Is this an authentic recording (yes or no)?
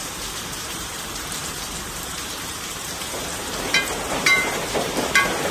no